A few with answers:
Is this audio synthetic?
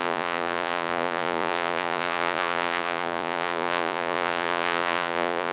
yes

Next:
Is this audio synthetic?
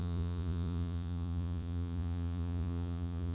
yes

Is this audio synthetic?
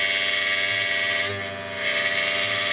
no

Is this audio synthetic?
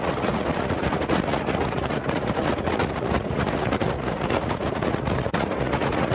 yes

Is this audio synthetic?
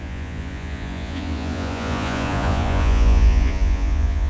yes